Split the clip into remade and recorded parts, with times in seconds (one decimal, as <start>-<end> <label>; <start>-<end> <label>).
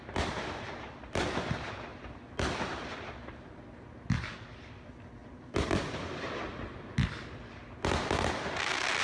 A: 0.0-3.5 remade; 3.5-5.2 recorded; 5.2-6.0 remade; 6.0-9.0 recorded